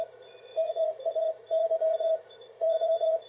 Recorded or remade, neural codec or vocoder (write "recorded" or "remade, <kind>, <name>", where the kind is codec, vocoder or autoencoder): remade, vocoder, Vocos